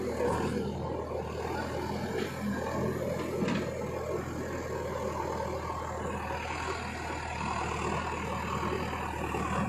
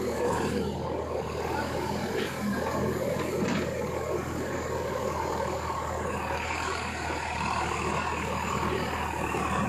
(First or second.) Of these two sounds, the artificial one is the second